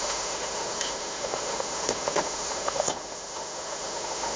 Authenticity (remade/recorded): remade